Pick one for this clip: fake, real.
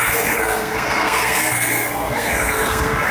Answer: fake